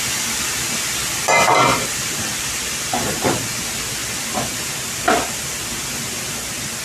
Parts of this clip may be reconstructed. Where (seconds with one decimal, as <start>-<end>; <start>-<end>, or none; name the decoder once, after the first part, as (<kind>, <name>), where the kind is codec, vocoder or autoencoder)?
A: 1.7-3.4 (vocoder, BigVGAN v2)